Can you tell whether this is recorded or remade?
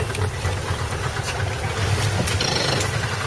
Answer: recorded